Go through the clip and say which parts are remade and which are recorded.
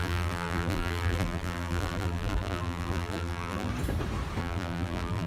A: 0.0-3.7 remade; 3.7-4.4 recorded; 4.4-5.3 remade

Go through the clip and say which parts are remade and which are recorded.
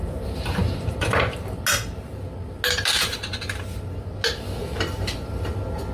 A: 0.0-1.2 remade; 1.2-4.6 recorded; 4.6-5.5 remade; 5.5-5.9 recorded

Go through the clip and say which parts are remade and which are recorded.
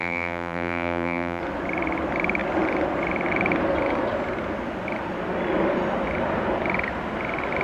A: 0.0-1.4 remade; 1.4-7.6 recorded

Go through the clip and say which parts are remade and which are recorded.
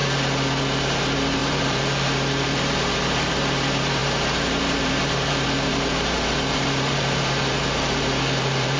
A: 0.0-0.6 recorded; 0.6-8.8 remade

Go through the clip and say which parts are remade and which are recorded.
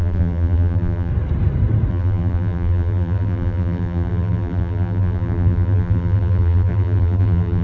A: 0.0-1.1 remade; 1.1-1.9 recorded; 1.9-7.6 remade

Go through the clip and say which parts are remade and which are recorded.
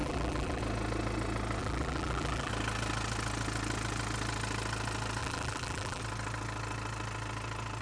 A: 0.0-0.6 remade; 0.6-1.6 recorded; 1.6-2.5 remade; 2.5-5.2 recorded; 5.2-6.0 remade; 6.0-7.8 recorded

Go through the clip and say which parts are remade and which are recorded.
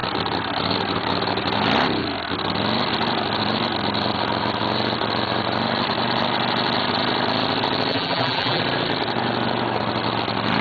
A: 0.0-7.9 recorded; 7.9-8.6 remade; 8.6-10.6 recorded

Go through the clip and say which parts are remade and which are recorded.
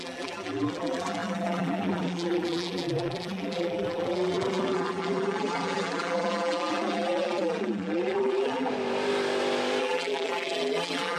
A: 0.0-8.7 remade; 8.7-9.8 recorded; 9.8-11.2 remade